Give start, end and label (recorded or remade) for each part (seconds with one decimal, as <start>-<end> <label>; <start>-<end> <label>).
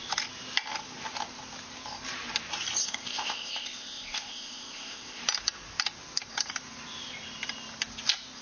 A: 0.0-2.8 recorded; 2.8-5.2 remade; 5.2-8.4 recorded